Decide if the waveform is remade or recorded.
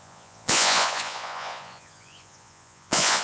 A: remade